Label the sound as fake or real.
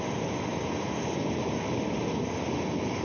real